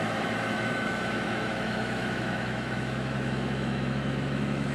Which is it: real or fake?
fake